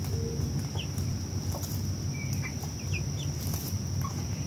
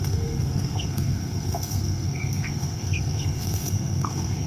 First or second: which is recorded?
first